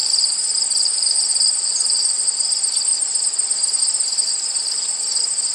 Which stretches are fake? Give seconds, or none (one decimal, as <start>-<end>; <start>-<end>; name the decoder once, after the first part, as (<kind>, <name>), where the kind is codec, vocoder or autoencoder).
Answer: 0.0-2.2 (vocoder, BigVGAN v2)